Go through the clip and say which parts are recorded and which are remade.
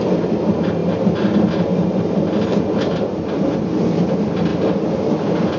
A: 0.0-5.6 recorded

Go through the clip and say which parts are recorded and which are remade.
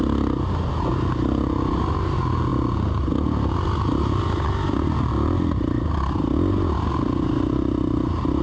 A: 0.0-8.4 recorded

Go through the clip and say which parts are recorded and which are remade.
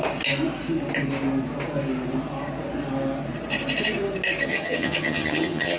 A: 0.0-4.5 recorded; 4.5-5.8 remade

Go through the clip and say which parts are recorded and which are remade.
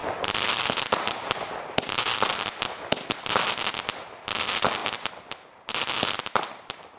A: 0.0-7.0 recorded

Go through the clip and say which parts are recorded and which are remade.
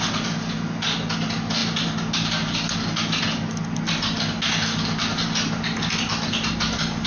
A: 0.0-7.1 recorded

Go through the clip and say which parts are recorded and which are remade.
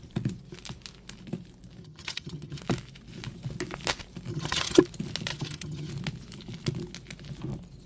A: 0.0-1.8 recorded; 1.8-2.6 remade; 2.6-4.3 recorded; 4.3-4.8 remade; 4.8-5.3 recorded; 5.3-5.9 remade; 5.9-7.9 recorded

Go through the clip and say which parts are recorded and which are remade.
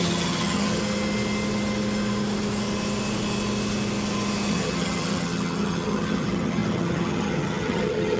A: 0.0-0.8 remade; 0.8-4.5 recorded; 4.5-8.2 remade